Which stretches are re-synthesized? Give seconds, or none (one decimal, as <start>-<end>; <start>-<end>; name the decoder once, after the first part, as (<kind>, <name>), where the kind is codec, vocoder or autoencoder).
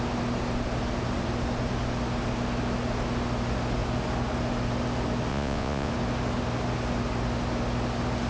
5.3-5.9 (vocoder, Vocos)